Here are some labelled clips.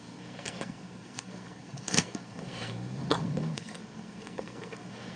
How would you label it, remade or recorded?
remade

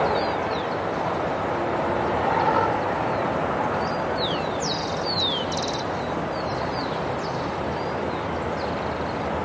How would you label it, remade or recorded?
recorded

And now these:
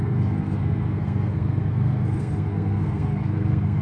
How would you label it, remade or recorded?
remade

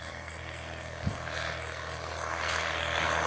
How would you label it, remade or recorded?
remade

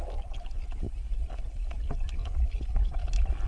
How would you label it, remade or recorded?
recorded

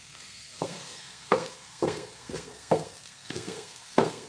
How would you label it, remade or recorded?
remade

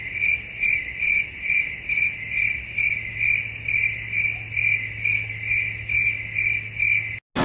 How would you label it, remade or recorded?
recorded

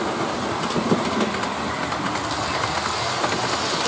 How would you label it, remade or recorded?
recorded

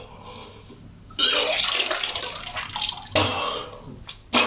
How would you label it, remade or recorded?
recorded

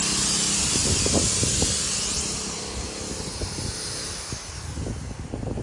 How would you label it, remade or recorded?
recorded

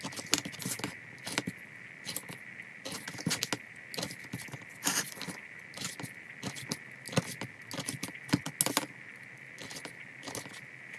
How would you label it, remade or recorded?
recorded